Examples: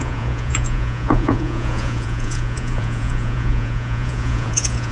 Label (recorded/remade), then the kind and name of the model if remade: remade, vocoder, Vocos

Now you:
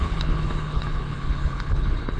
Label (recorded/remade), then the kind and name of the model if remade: remade, codec, HILCodec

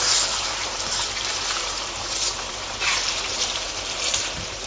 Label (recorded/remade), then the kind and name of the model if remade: remade, vocoder, BigVGAN v2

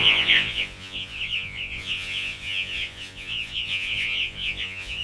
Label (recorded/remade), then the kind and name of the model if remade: remade, vocoder, Vocos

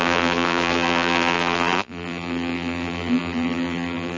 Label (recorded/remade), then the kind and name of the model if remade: remade, vocoder, BigVGAN v2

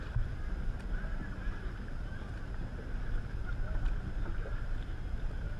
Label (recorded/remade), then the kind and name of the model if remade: recorded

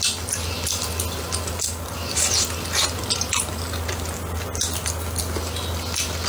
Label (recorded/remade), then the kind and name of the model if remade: recorded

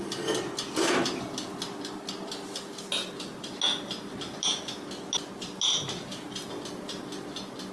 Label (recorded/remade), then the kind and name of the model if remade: recorded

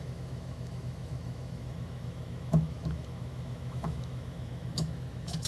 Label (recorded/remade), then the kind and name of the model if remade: remade, autoencoder, DAC-VAE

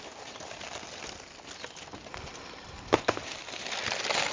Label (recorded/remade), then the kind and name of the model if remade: recorded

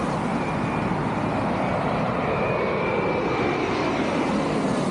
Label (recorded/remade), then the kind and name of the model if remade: recorded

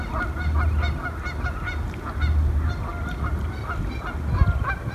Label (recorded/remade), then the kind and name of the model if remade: recorded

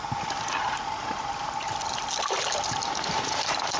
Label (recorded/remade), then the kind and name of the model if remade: recorded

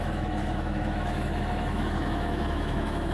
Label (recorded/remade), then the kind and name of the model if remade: remade, autoencoder, DAC-VAE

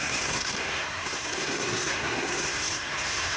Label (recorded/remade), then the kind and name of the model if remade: remade, codec, SNAC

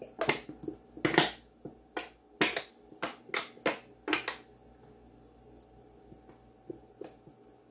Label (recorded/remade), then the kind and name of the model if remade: recorded